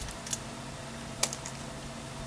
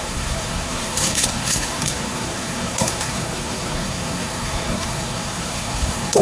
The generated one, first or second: second